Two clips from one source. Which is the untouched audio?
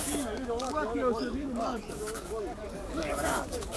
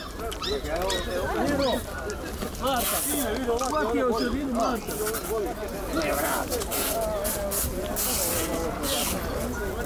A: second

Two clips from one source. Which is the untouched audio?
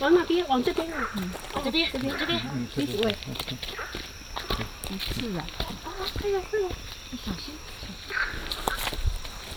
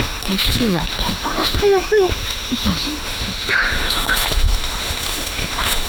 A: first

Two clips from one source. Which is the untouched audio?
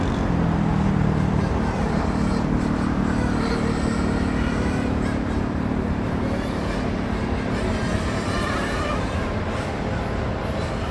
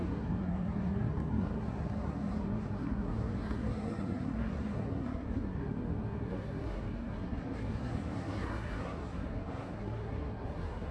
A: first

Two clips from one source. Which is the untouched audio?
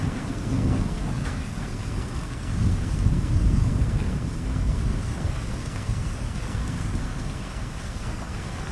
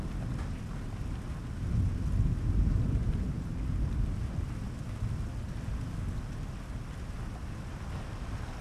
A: second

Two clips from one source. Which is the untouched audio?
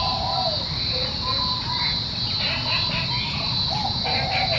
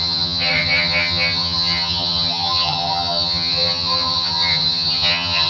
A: first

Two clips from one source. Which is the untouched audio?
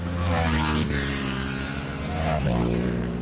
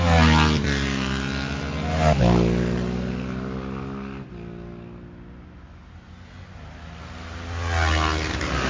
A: second